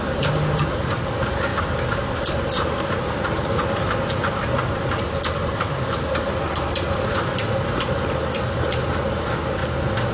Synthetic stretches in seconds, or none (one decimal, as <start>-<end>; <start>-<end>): 0.0-9.6